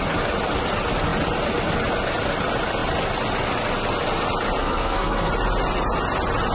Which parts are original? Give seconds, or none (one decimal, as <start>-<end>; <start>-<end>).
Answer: 0.0-4.6; 5.3-6.5